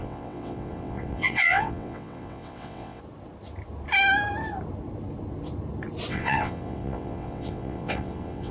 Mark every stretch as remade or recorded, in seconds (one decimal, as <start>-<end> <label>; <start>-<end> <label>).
0.0-3.0 remade; 3.0-6.1 recorded; 6.1-8.5 remade